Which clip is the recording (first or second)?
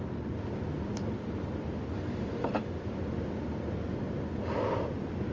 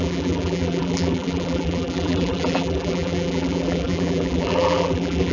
first